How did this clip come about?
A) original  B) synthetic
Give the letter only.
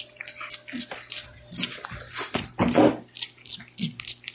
A